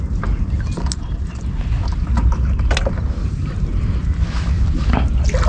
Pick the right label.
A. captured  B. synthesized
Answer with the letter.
A